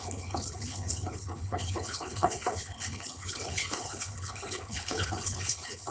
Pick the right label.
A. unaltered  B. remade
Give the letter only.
B